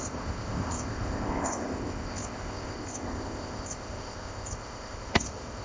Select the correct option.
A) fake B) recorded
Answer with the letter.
A